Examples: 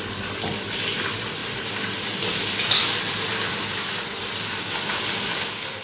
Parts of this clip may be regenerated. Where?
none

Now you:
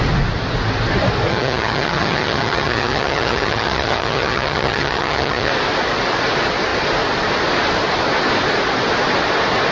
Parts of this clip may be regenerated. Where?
1.3-5.5 (vocoder, HiFi-GAN)

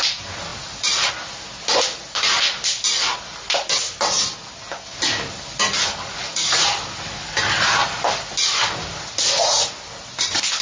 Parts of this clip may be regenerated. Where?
none

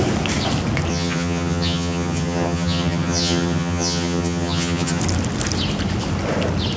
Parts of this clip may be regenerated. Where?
0.9-5.0 (vocoder, HiFi-GAN)

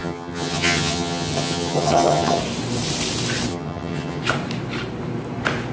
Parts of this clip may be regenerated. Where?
0.0-2.4 (vocoder, HiFi-GAN); 3.5-4.2

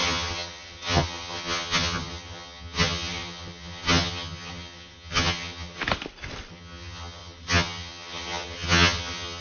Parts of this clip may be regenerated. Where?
0.0-5.8 (vocoder, HiFi-GAN); 6.5-9.4

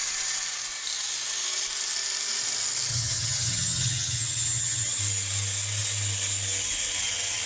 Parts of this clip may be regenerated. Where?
2.9-5.0 (vocoder, HiFi-GAN)